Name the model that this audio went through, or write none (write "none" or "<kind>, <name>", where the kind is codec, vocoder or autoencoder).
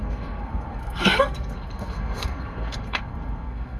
codec, SNAC